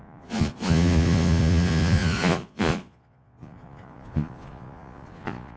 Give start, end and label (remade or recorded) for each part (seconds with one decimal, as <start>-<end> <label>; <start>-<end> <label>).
0.0-5.6 remade